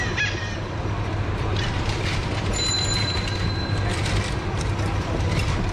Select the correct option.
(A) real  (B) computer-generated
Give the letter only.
B